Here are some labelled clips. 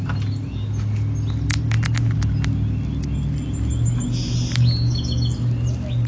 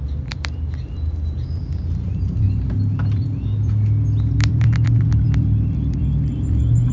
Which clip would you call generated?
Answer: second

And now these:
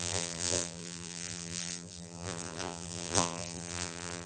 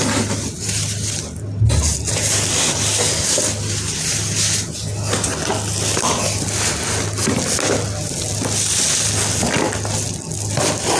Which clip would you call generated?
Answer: first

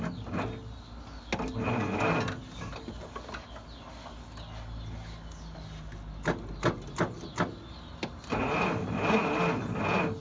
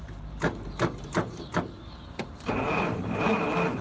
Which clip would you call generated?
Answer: second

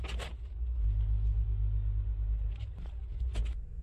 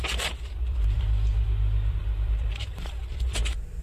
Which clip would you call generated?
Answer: second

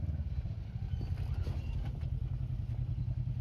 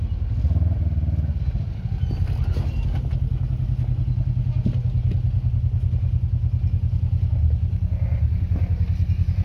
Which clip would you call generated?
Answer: first